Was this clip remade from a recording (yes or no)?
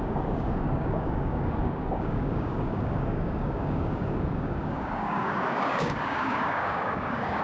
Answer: yes